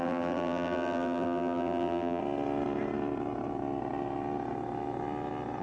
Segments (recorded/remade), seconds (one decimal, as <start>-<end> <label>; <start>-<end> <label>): 0.0-2.2 remade; 2.2-5.6 recorded